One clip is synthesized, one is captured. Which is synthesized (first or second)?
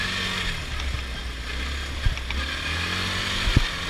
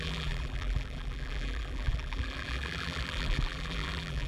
second